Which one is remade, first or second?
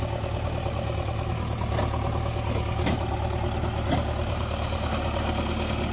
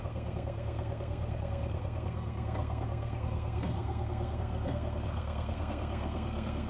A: second